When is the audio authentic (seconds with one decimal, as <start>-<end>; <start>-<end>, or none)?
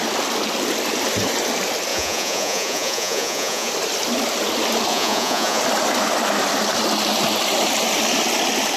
0.0-1.9; 3.7-4.9; 5.6-8.8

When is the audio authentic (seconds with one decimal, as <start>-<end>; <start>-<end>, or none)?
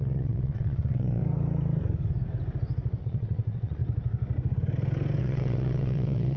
1.2-3.0; 3.8-5.2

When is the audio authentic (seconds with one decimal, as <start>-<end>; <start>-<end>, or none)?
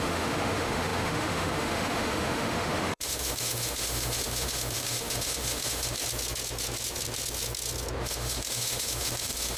6.0-8.0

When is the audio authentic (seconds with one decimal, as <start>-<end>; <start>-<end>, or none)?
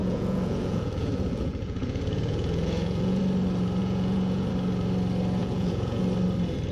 3.2-3.8; 4.5-5.4; 6.0-6.7